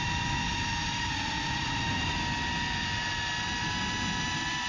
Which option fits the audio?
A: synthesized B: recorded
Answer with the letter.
B